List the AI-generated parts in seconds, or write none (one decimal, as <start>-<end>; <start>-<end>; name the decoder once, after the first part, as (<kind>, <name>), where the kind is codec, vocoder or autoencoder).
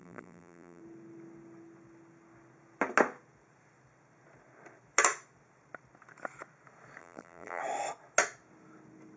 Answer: 0.0-0.8 (vocoder, BigVGAN v2); 7.0-7.6